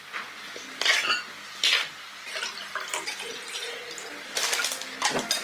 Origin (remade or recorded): recorded